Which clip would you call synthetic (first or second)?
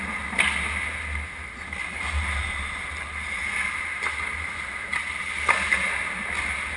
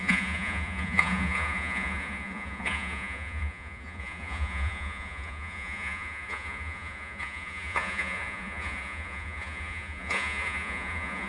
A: second